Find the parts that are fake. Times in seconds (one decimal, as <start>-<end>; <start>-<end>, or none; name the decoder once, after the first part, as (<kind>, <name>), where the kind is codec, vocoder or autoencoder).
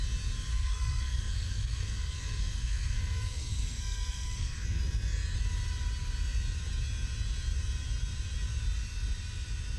0.5-4.8 (codec, SNAC)